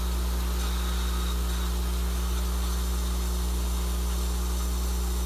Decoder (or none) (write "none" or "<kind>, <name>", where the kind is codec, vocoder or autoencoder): none